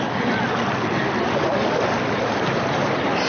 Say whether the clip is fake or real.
real